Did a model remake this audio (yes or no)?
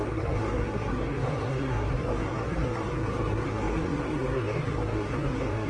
yes